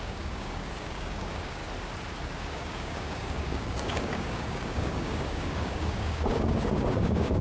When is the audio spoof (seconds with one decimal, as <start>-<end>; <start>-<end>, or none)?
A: 0.0-1.6; 2.3-7.4